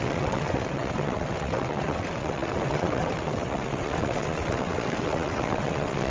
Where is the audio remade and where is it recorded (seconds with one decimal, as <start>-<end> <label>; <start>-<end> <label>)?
0.0-6.1 remade